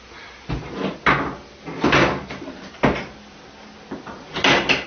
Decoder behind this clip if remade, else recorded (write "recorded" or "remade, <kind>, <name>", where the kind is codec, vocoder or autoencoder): recorded